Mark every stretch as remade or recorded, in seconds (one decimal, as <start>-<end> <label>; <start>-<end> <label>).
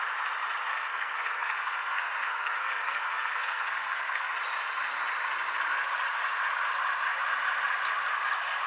0.0-0.7 recorded; 0.7-4.3 remade; 4.3-8.7 recorded